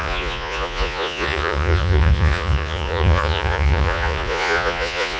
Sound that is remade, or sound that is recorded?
remade